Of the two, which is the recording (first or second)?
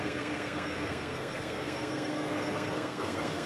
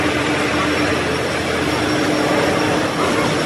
second